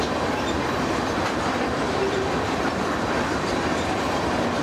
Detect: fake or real fake